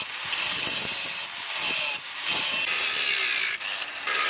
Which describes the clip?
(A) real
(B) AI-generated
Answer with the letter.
A